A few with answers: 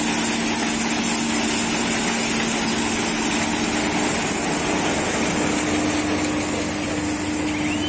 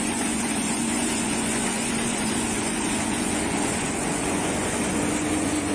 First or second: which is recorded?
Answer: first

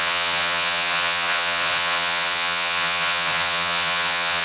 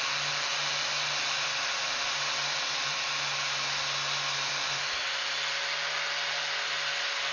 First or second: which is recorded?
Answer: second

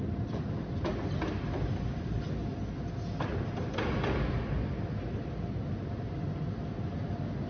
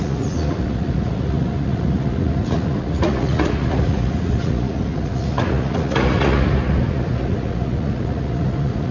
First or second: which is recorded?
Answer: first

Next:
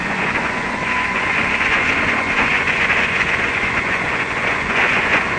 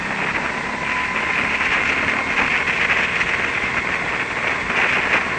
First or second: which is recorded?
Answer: second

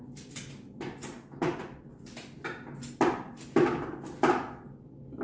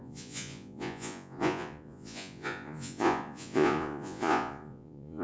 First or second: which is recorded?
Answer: first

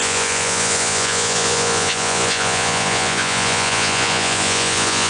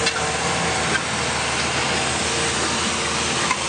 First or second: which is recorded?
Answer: second